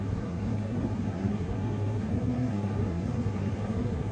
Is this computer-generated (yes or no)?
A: yes